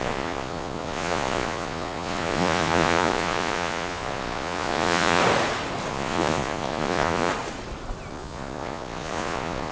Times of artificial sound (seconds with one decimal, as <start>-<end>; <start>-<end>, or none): 0.0-5.2; 5.9-7.3; 8.1-9.7